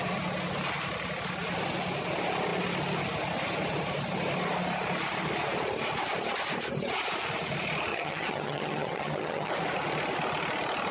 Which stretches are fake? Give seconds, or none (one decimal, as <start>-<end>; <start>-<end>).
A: 7.9-9.5